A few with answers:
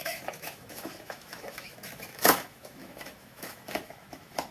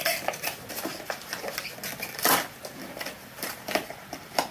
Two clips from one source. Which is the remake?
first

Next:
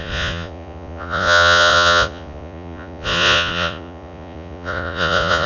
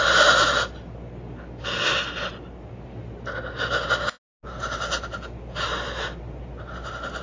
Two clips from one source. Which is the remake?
first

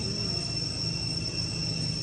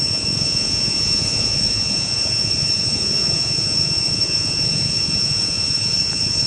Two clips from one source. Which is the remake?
second